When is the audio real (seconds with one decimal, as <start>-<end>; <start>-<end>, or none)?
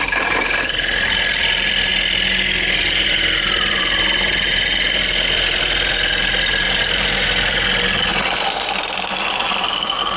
1.9-2.8